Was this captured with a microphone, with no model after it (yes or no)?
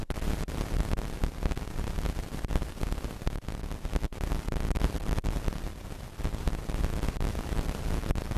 yes